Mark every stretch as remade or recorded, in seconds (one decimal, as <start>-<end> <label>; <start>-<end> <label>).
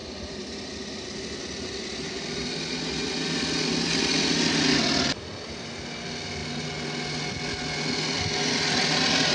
0.0-1.2 remade; 1.2-9.3 recorded